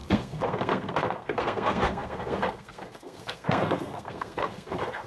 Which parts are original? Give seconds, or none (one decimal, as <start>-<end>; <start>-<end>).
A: none